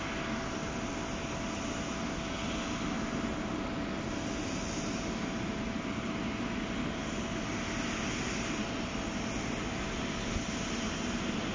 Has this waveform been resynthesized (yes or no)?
no